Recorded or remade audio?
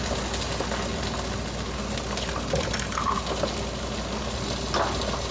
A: recorded